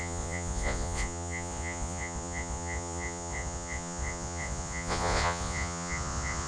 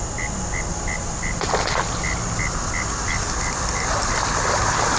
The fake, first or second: first